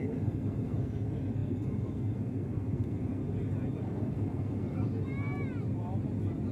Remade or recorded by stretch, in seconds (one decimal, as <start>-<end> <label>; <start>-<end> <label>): 0.0-3.2 remade; 3.2-3.8 recorded; 3.8-4.9 remade; 4.9-6.5 recorded